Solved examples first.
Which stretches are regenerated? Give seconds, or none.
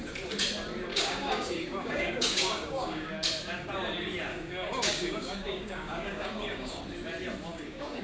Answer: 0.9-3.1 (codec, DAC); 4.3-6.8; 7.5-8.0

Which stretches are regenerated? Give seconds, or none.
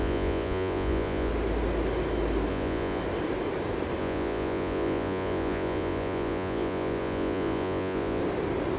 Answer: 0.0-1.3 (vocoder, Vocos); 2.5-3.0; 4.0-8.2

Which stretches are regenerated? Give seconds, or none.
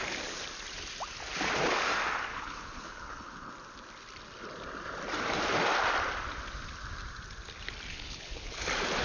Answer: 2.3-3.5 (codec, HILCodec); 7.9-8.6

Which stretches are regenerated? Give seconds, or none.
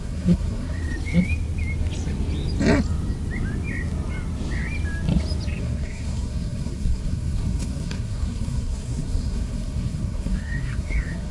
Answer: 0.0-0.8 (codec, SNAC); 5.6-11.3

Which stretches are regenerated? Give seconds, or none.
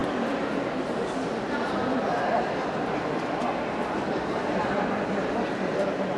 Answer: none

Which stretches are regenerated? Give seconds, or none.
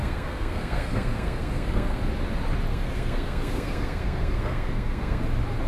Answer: 0.0-2.0 (codec, SNAC); 2.7-5.2